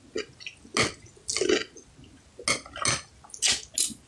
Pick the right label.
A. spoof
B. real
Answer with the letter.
B